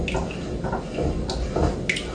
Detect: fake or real real